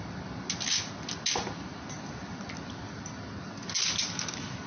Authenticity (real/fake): real